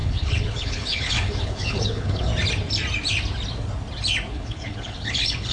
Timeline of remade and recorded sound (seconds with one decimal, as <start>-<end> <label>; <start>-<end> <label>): 0.0-2.3 remade; 2.3-4.3 recorded; 4.3-5.5 remade